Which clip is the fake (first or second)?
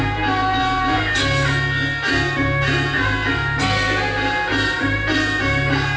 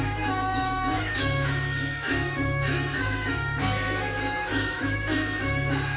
second